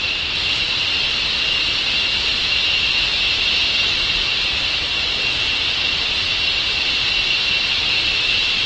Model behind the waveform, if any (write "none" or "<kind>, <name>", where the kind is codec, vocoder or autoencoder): none